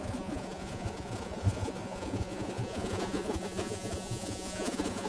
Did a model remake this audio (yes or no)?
yes